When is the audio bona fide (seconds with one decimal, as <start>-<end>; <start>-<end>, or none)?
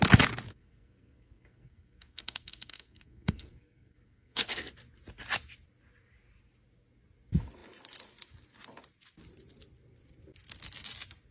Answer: 0.0-0.5; 4.5-11.3